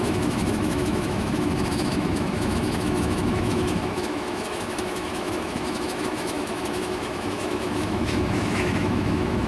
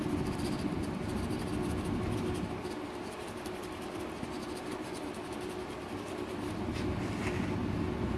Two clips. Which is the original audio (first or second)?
second